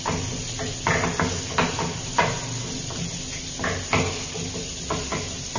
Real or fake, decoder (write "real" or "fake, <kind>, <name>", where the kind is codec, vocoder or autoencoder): real